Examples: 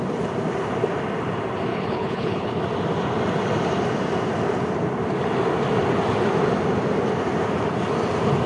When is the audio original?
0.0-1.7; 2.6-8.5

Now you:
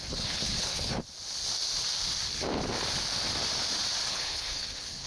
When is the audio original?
1.0-4.1

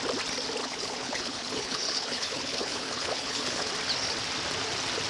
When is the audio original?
0.0-0.6; 3.7-5.1